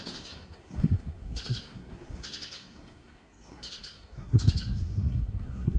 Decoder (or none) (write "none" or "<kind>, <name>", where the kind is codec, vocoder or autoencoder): codec, SNAC